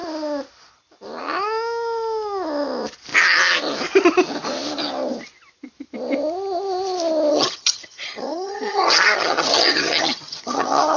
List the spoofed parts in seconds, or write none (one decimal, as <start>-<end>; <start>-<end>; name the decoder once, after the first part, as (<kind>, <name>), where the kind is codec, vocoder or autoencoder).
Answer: 7.3-11.0 (vocoder, HiFi-GAN)